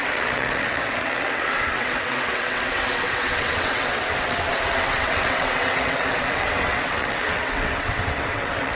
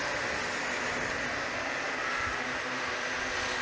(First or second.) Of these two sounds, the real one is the second